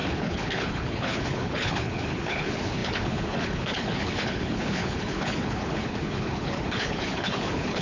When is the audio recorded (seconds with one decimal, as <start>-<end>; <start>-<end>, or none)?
none